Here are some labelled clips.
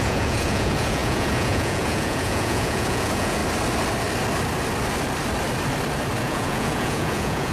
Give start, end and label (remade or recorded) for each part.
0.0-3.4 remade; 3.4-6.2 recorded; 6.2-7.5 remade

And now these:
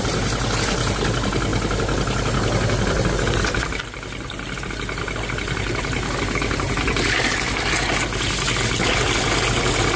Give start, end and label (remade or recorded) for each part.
0.0-10.0 recorded

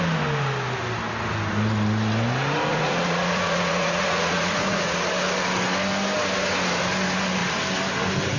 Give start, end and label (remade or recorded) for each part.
0.0-2.7 recorded; 2.7-5.1 remade; 5.1-8.4 recorded

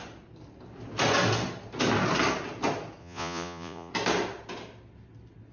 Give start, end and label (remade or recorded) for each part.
0.0-3.0 recorded; 3.0-3.9 remade; 3.9-5.5 recorded